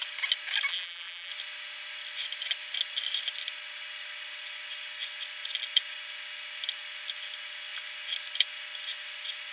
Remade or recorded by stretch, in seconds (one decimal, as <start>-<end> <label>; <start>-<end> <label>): 0.0-0.7 recorded; 0.7-1.3 remade; 1.3-9.5 recorded